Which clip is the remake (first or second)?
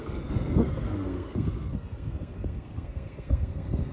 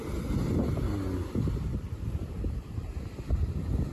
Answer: first